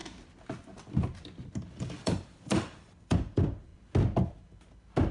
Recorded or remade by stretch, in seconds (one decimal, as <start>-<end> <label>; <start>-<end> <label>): 0.0-2.0 recorded; 2.0-3.7 remade; 3.7-5.1 recorded